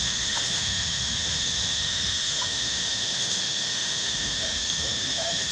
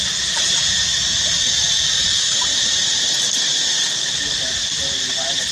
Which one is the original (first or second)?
second